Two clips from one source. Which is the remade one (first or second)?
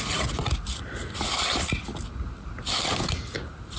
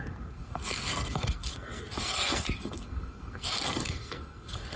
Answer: second